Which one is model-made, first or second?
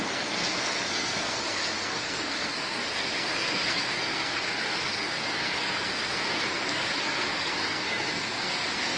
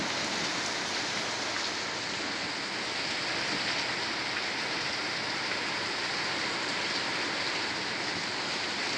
first